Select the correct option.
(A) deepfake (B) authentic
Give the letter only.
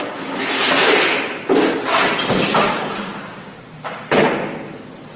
A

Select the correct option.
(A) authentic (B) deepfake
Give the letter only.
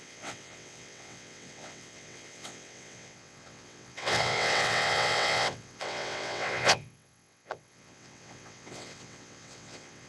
B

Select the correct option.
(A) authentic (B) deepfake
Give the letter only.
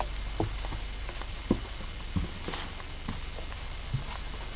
A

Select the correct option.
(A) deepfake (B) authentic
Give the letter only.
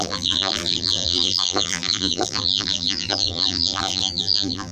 A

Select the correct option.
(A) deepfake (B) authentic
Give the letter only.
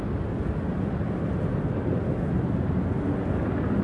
B